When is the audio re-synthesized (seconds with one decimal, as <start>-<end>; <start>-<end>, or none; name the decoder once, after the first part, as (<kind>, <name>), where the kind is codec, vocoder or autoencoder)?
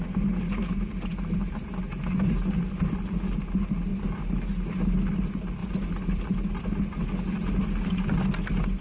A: 5.6-6.3 (vocoder, BigVGAN v2)